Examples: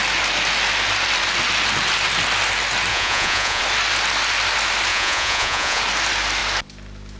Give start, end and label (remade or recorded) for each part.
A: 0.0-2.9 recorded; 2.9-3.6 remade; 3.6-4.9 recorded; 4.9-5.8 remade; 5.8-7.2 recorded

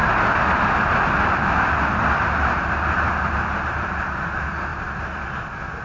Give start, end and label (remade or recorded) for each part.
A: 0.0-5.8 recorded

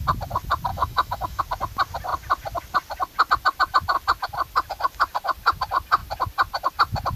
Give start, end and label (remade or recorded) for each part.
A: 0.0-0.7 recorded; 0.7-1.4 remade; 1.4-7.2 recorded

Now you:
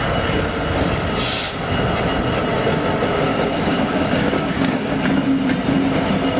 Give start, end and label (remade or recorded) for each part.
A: 0.0-3.3 recorded; 3.3-5.0 remade; 5.0-6.4 recorded